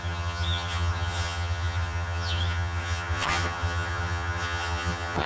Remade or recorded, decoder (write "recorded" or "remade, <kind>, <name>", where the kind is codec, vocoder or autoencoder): remade, vocoder, HiFi-GAN